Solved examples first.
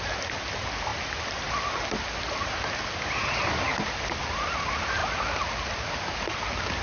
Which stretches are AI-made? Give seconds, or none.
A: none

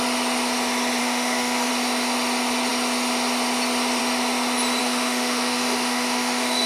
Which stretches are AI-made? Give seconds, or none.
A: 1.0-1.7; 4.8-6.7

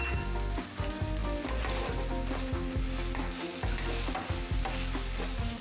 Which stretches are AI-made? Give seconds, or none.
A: none

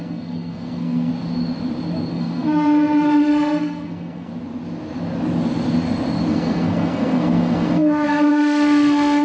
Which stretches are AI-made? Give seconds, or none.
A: 0.0-1.1; 2.1-4.3; 6.3-9.2